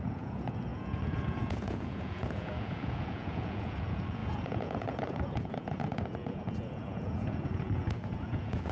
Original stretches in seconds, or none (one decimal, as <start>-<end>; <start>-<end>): none